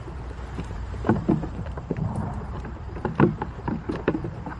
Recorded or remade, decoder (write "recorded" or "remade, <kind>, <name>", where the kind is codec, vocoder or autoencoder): remade, vocoder, BigVGAN v2